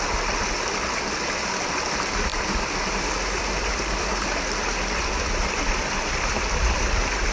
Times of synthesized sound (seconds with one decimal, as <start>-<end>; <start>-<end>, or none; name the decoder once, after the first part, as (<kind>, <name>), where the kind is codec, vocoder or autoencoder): 2.3-6.4 (vocoder, BigVGAN v2)